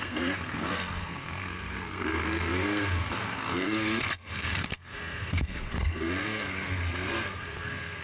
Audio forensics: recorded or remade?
remade